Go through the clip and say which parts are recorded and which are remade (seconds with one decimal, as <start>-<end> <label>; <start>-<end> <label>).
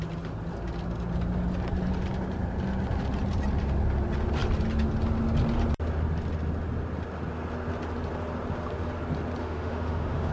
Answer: 0.0-9.4 recorded; 9.4-10.3 remade